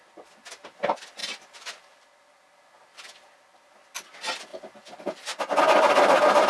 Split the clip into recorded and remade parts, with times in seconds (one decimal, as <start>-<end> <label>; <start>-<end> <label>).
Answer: 0.0-6.5 recorded